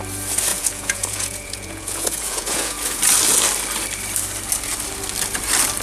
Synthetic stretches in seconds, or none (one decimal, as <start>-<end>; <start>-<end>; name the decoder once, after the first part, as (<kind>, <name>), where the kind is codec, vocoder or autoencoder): 0.5-3.0 (vocoder, Vocos)

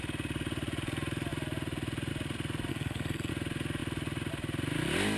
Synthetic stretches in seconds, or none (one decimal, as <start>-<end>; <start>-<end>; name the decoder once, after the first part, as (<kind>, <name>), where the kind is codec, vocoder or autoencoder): 2.7-3.3 (codec, SNAC)

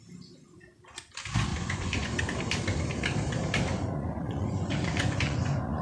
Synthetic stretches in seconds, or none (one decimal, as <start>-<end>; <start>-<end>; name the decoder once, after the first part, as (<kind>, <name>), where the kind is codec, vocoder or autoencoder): 1.5-2.2 (vocoder, Vocos); 3.7-5.8

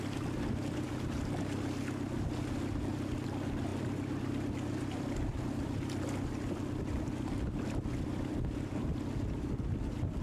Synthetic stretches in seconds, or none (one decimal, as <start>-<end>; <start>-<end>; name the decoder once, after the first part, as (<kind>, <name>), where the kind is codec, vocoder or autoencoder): none

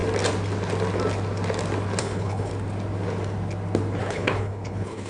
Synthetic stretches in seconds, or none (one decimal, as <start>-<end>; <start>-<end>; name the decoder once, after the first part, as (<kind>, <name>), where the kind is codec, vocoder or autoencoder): 2.0-2.5 (codec, HILCodec); 4.0-5.1

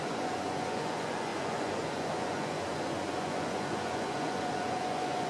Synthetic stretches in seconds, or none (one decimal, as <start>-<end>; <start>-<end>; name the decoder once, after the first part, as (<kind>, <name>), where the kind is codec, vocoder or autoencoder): 0.0-5.3 (vocoder, Vocos)

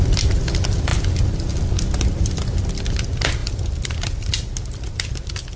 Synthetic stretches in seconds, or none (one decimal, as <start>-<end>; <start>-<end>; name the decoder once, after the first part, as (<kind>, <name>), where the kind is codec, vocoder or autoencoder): none